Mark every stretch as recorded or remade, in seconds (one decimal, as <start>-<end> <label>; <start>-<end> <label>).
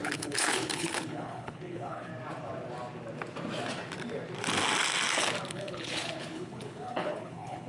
0.0-2.1 remade; 2.1-5.5 recorded; 5.5-7.7 remade